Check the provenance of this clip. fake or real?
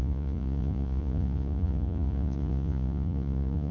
fake